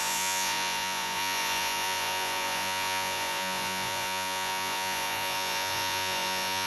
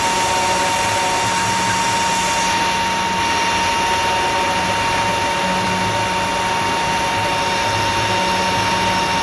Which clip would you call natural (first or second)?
second